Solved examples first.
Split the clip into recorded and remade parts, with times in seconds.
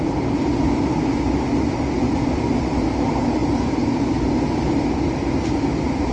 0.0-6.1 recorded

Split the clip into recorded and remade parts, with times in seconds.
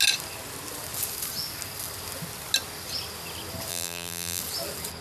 0.0-3.7 recorded; 3.7-4.4 remade; 4.4-5.0 recorded